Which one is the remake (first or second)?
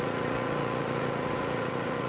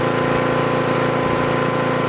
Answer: first